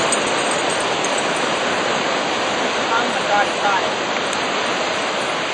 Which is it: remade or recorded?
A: recorded